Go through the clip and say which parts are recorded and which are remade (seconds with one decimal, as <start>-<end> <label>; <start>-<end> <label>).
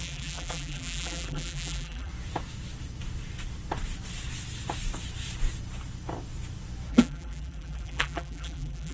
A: 0.0-2.1 remade; 2.1-6.9 recorded; 6.9-8.9 remade